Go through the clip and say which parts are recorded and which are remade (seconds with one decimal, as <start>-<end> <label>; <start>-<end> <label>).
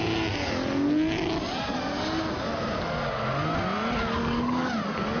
0.0-4.2 recorded; 4.2-4.7 remade; 4.7-5.2 recorded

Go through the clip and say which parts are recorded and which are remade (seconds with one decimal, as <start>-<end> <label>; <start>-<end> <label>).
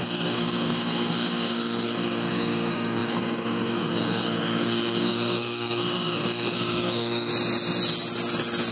0.0-7.3 remade; 7.3-8.7 recorded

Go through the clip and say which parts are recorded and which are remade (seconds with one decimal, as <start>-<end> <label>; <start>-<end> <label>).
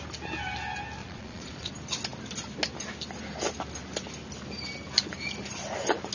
0.0-1.0 recorded; 1.0-1.7 remade; 1.7-6.1 recorded